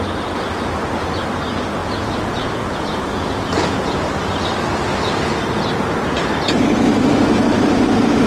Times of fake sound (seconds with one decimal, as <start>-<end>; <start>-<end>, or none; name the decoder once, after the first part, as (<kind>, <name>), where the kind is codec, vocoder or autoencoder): 1.8-4.0 (vocoder, Vocos)